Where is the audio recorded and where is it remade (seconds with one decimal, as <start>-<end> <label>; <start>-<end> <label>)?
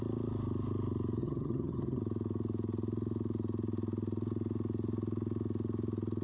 0.0-1.2 recorded; 1.2-2.0 remade; 2.0-6.2 recorded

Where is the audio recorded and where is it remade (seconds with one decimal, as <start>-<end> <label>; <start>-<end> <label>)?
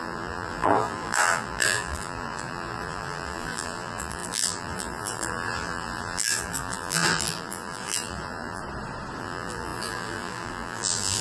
0.0-8.6 remade; 8.6-9.2 recorded; 9.2-11.2 remade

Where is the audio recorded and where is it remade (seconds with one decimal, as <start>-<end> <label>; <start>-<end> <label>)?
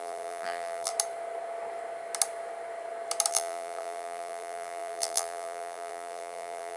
0.0-0.9 remade; 0.9-3.3 recorded; 3.3-6.8 remade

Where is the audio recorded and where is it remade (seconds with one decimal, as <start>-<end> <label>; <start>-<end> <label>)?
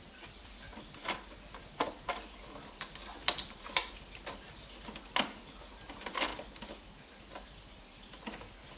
0.0-8.8 recorded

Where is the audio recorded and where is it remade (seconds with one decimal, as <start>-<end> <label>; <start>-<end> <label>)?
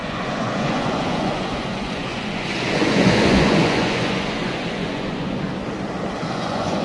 0.0-5.5 remade; 5.5-6.3 recorded; 6.3-6.8 remade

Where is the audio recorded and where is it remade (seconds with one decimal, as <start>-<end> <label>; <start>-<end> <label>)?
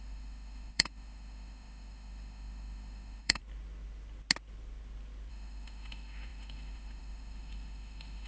0.0-3.4 remade; 3.4-5.3 recorded; 5.3-8.3 remade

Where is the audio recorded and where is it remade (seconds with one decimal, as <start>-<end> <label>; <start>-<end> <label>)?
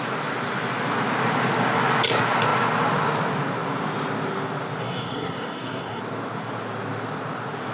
0.0-4.8 recorded; 4.8-6.0 remade; 6.0-7.7 recorded